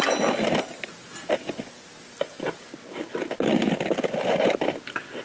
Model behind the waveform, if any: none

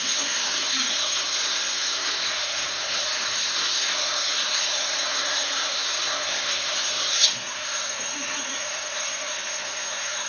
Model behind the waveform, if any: codec, SNAC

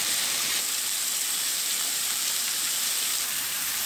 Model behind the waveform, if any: vocoder, BigVGAN v2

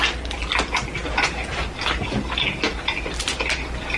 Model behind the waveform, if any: none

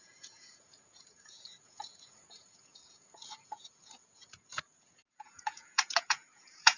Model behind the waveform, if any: vocoder, Vocos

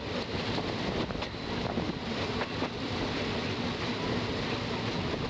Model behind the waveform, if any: none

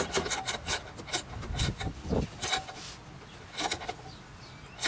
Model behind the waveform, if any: none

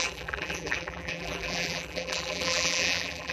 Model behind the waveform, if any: vocoder, BigVGAN v2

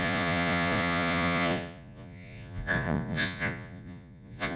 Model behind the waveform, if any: vocoder, Vocos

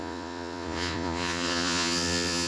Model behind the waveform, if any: vocoder, Vocos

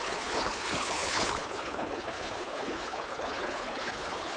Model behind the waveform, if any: codec, HILCodec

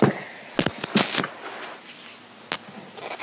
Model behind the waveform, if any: none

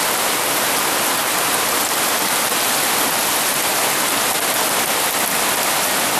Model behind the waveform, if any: none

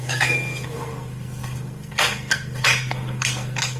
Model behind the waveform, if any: codec, SNAC